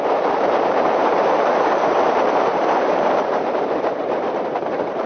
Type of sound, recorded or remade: remade